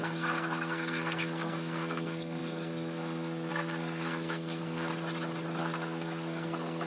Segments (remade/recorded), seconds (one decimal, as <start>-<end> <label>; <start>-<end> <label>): 0.0-4.9 remade; 4.9-5.6 recorded; 5.6-6.9 remade